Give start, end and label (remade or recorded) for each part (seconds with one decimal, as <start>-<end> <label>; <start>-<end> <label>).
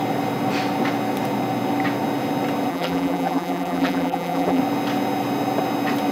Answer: 0.0-2.7 recorded; 2.7-4.6 remade; 4.6-6.1 recorded